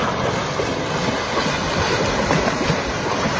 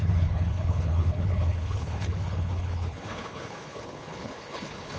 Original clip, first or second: first